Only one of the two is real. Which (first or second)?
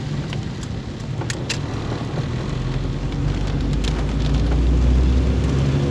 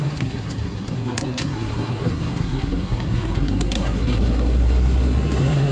first